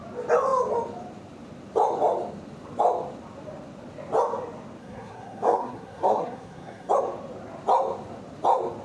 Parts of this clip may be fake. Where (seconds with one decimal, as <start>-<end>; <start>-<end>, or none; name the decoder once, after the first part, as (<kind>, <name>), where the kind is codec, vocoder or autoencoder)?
4.8-6.9 (codec, SNAC)